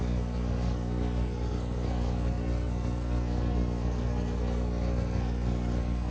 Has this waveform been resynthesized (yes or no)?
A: yes